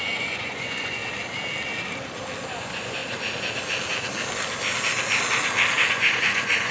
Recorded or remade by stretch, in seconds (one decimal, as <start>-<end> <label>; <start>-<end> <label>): 0.0-1.0 remade; 1.0-2.6 recorded; 2.6-3.0 remade; 3.0-5.9 recorded; 5.9-6.7 remade